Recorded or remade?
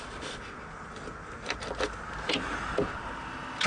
recorded